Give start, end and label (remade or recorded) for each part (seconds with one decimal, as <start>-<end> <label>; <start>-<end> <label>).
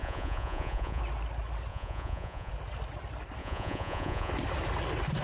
0.0-1.0 remade; 1.0-1.7 recorded; 1.7-2.5 remade; 2.5-3.4 recorded; 3.4-4.3 remade; 4.3-5.2 recorded